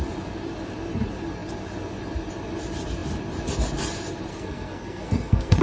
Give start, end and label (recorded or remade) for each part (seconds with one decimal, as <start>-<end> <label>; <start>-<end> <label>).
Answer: 0.0-4.3 recorded; 4.3-5.6 remade